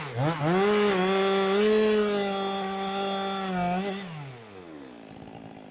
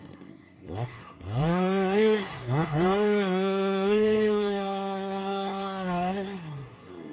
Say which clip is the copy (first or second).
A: second